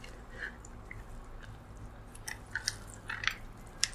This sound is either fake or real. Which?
real